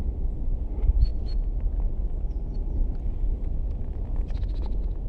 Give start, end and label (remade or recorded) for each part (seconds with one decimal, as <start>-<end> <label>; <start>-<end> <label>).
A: 0.0-5.1 recorded